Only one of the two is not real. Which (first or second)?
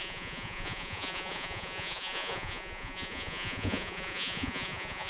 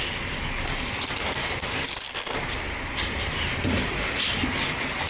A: first